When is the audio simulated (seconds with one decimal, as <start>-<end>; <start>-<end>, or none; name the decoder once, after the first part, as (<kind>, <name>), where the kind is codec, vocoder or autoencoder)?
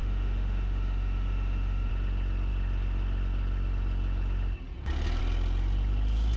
0.0-1.9 (autoencoder, DAC-VAE)